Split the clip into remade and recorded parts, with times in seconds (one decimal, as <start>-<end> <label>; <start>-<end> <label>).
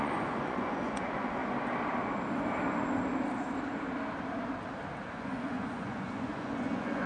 0.0-1.4 remade; 1.4-5.1 recorded; 5.1-7.1 remade